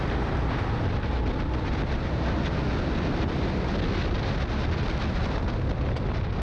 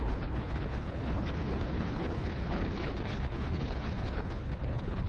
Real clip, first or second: first